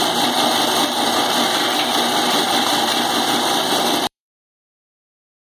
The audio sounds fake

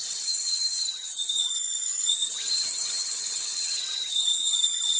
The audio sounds fake